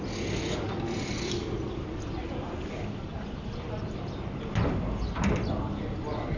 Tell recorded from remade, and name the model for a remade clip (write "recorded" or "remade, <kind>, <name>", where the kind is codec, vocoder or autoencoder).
recorded